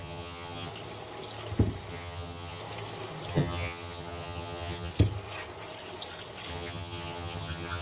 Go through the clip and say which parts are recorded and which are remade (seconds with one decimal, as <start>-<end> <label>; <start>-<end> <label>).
0.0-0.7 remade; 0.7-1.9 recorded; 1.9-2.6 remade; 2.6-3.3 recorded; 3.3-4.9 remade; 4.9-6.5 recorded; 6.5-7.8 remade